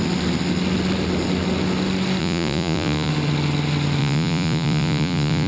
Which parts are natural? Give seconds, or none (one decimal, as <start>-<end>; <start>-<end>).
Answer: 0.0-2.2; 3.1-4.0